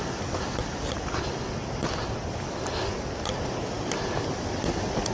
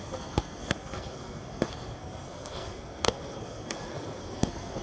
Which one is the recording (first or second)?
first